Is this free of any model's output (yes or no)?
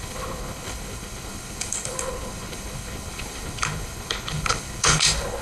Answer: no